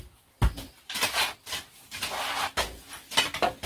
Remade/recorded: recorded